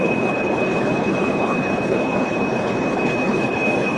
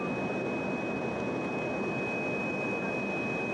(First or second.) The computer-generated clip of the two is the first